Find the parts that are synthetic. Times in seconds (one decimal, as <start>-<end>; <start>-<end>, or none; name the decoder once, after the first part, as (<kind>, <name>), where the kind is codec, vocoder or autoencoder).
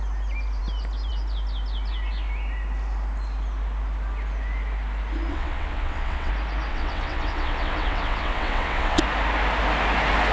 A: 5.3-6.3 (vocoder, WaveNeXt); 6.7-9.0